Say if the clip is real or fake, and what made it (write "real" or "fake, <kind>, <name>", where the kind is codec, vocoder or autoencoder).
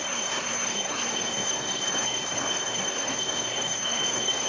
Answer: fake, codec, SNAC